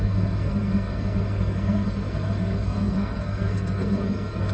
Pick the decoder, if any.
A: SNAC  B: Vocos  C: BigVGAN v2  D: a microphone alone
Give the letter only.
A